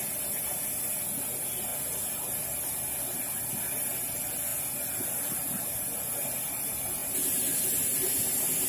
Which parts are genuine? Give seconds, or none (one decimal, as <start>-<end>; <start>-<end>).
0.0-8.7